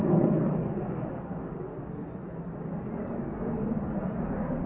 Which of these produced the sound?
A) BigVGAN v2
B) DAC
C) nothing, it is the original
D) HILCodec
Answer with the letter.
C